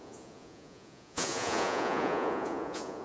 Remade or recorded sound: remade